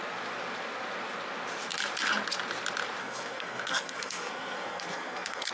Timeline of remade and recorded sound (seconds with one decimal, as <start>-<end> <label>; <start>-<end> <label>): 0.0-3.0 recorded; 3.0-5.5 remade